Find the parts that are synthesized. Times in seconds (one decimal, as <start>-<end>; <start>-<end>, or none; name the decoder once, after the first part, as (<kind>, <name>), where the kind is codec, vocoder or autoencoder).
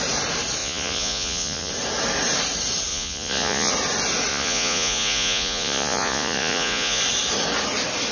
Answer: 0.6-1.7 (vocoder, Vocos); 2.9-3.7; 4.3-7.0